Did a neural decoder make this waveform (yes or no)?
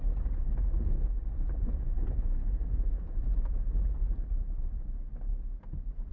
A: no